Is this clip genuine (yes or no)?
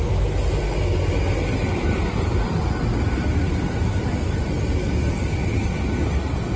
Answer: yes